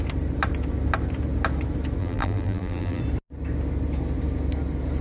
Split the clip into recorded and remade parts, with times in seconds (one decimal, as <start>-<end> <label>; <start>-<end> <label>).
0.0-2.0 recorded; 2.0-3.0 remade; 3.0-5.0 recorded